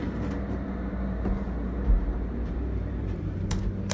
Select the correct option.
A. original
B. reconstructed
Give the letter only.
B